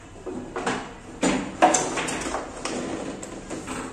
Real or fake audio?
real